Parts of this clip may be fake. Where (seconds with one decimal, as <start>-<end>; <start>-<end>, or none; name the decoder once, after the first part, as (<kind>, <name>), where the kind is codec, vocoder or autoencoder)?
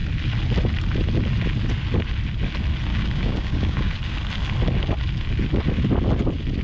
2.9-3.9 (codec, DAC)